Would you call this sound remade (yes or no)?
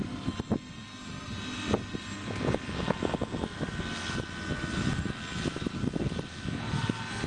no